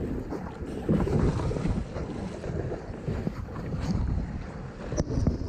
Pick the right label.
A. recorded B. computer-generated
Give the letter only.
A